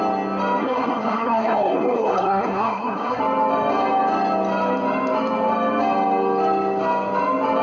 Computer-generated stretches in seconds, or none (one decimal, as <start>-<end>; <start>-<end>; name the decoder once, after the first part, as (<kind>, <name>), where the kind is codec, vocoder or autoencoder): 0.6-3.2 (codec, SNAC)